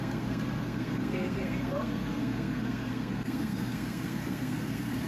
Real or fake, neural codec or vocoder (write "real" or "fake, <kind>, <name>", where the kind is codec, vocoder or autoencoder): fake, codec, SNAC